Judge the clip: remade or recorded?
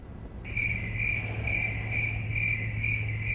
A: recorded